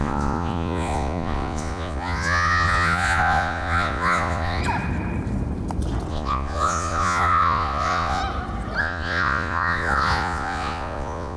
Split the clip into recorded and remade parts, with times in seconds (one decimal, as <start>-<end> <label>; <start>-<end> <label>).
0.0-4.6 remade; 4.6-6.1 recorded; 6.1-8.2 remade; 8.2-8.8 recorded; 8.8-11.4 remade

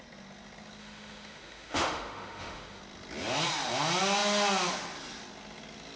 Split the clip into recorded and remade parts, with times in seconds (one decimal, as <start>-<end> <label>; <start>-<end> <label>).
0.0-0.8 recorded; 0.8-2.8 remade; 2.8-6.0 recorded

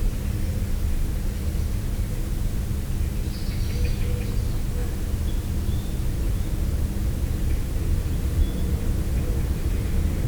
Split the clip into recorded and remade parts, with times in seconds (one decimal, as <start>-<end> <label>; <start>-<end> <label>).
0.0-10.3 recorded

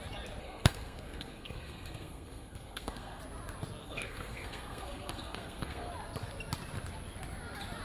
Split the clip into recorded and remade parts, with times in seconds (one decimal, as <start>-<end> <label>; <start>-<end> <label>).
0.0-0.4 recorded; 0.4-3.2 remade; 3.2-3.8 recorded; 3.8-5.9 remade; 5.9-7.8 recorded

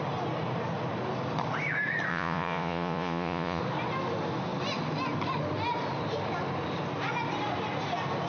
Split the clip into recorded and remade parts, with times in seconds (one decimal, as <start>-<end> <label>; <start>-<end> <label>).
0.0-2.1 recorded; 2.1-3.6 remade; 3.6-8.3 recorded

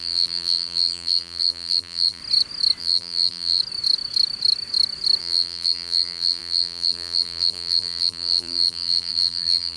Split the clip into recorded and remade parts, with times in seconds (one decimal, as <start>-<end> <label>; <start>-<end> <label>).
0.0-2.2 remade; 2.2-2.8 recorded; 2.8-3.6 remade; 3.6-5.2 recorded; 5.2-9.8 remade

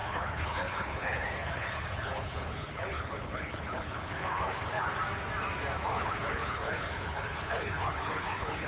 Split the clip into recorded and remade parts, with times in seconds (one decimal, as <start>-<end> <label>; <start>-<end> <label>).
0.0-5.0 remade; 5.0-5.9 recorded; 5.9-8.7 remade